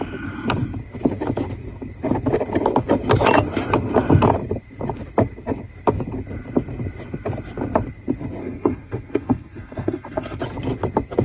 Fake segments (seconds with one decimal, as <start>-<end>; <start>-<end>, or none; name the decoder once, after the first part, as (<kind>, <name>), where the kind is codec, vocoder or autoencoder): 8.4-10.4 (codec, SNAC)